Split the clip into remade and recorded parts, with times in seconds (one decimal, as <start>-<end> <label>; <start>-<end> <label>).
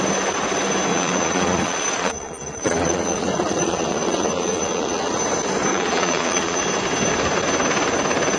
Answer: 0.0-0.9 recorded; 0.9-5.2 remade; 5.2-5.7 recorded; 5.7-6.6 remade; 6.6-8.4 recorded